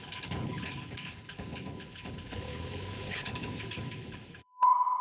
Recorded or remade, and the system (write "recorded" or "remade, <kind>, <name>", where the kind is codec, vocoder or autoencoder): remade, codec, HILCodec